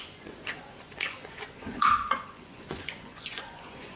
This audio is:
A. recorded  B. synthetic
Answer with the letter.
B